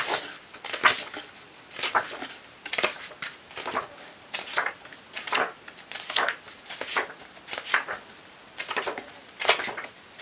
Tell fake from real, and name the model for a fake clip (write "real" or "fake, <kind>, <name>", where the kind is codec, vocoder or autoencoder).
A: real